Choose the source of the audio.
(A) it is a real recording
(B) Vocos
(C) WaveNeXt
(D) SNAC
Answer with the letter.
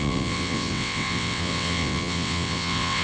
C